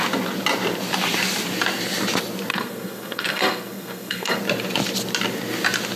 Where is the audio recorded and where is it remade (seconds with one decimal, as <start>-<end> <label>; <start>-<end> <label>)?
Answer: 0.0-2.5 recorded; 2.5-4.4 remade; 4.4-6.0 recorded